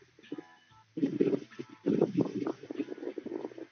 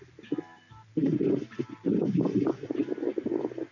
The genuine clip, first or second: second